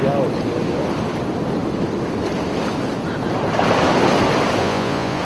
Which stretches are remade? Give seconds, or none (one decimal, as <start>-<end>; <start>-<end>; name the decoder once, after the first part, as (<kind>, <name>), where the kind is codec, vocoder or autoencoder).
4.6-5.2 (vocoder, Vocos)